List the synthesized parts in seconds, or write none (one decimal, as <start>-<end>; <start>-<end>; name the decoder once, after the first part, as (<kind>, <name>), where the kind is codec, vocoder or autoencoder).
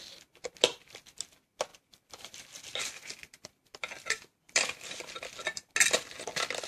1.7-5.7 (vocoder, BigVGAN v2)